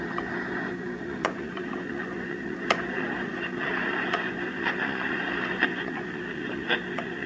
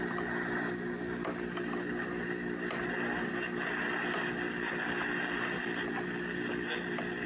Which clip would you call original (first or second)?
second